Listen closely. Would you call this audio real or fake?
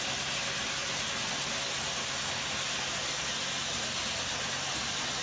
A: real